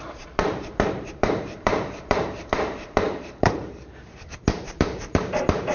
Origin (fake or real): fake